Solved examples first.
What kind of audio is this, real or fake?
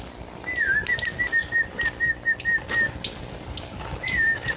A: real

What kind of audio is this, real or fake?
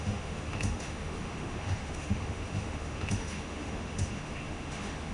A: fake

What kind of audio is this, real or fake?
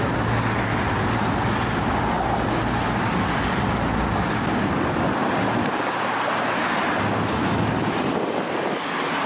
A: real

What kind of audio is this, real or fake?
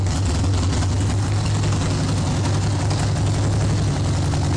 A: real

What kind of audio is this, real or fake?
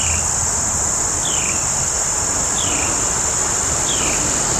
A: real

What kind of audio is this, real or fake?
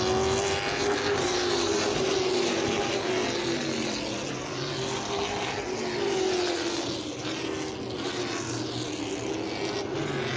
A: real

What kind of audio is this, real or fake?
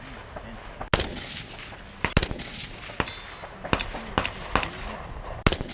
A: real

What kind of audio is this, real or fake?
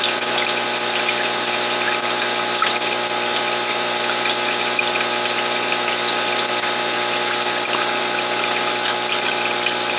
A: real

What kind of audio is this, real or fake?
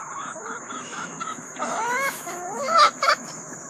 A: fake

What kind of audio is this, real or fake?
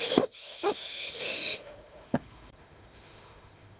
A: fake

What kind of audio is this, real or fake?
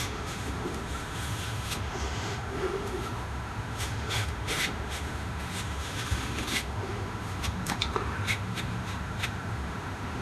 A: fake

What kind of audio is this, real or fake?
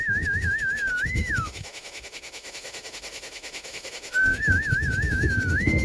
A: fake